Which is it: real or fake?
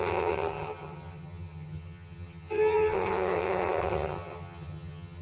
fake